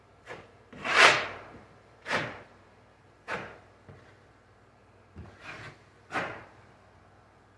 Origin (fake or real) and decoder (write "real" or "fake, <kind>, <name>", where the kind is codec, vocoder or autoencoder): fake, vocoder, BigVGAN v2